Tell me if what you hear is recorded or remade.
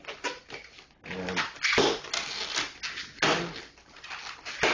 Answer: recorded